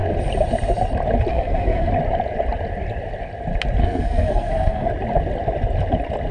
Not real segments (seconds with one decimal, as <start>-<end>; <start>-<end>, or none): 1.3-1.9; 3.8-4.9